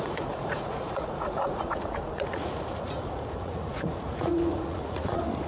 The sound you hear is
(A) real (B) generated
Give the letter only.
B